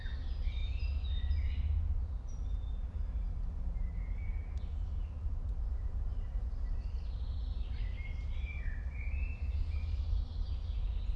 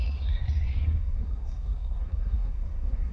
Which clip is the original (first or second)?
first